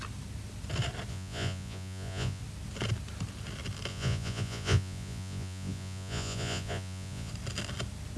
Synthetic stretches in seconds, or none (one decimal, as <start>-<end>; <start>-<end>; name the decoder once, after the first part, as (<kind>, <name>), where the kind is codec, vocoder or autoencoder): 1.1-2.4 (vocoder, Vocos); 3.9-7.3